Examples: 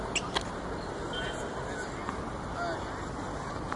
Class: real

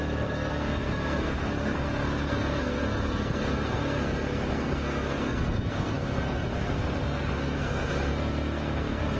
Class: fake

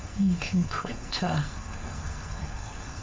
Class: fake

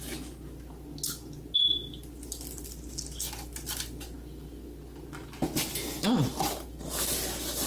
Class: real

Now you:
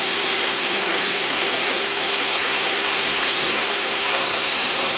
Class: fake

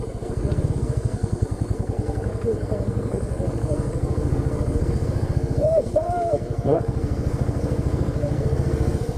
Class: fake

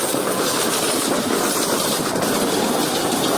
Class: real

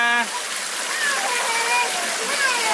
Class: real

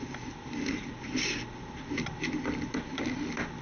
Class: real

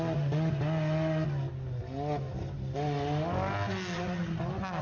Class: real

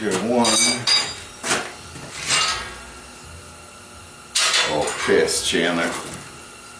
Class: real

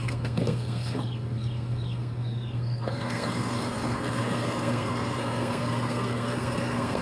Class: fake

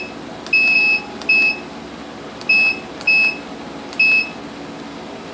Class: real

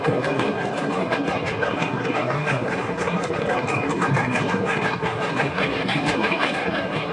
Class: fake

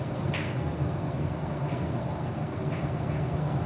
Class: fake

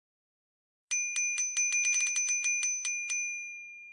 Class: real